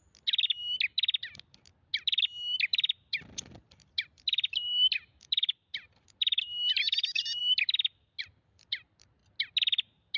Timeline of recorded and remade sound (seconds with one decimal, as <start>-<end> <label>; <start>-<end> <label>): 0.0-10.2 recorded